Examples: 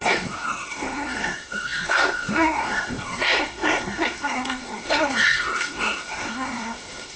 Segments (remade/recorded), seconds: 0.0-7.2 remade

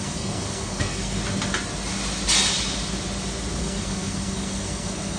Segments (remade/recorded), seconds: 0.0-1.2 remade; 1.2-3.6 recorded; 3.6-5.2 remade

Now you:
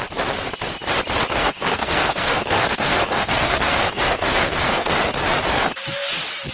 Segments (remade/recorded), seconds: 0.0-1.4 recorded; 1.4-4.9 remade; 4.9-6.5 recorded